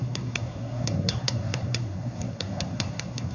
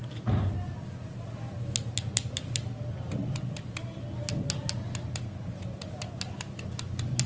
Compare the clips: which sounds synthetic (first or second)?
first